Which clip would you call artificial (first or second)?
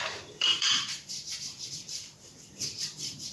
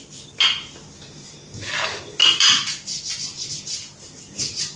first